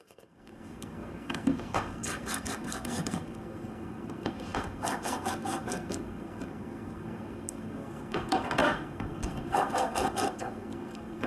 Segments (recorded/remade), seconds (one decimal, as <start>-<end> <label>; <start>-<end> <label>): 0.0-11.3 remade

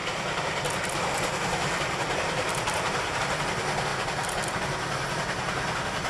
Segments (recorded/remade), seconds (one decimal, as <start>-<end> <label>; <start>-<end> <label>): 0.0-3.2 remade; 3.2-6.1 recorded